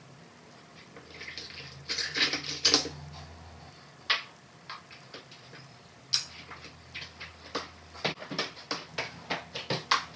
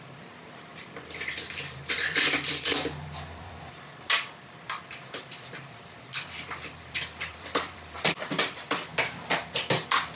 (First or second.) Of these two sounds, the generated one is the second